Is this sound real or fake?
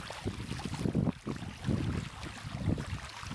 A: real